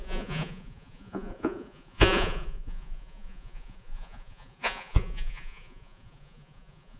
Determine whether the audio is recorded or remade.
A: remade